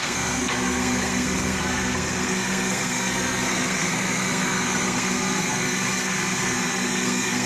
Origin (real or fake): fake